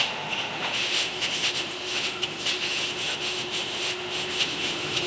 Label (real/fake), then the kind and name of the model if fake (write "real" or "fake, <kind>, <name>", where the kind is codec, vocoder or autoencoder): fake, autoencoder, DAC-VAE